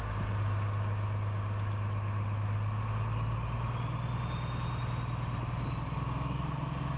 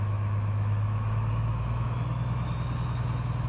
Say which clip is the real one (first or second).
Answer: first